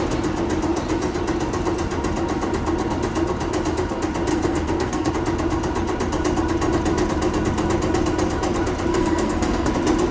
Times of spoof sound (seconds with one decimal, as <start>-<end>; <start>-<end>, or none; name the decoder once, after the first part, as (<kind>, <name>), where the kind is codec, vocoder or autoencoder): 4.3-5.1 (codec, SNAC); 8.9-9.7